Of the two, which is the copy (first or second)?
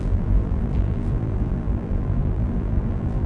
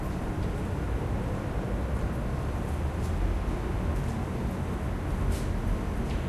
first